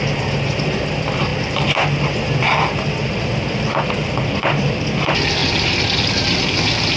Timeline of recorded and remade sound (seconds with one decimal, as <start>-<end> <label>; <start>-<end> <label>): 0.0-1.3 recorded; 1.3-2.0 remade; 2.0-3.0 recorded; 3.0-4.6 remade; 4.6-5.4 recorded; 5.4-6.4 remade; 6.4-7.0 recorded